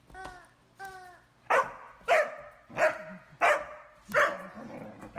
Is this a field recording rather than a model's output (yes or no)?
yes